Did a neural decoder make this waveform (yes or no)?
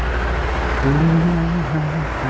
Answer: no